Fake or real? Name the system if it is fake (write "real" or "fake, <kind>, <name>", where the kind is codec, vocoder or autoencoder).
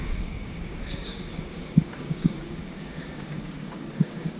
fake, codec, DAC